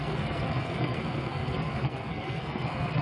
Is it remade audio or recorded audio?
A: remade